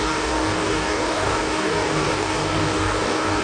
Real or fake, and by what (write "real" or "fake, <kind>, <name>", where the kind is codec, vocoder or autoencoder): fake, codec, DAC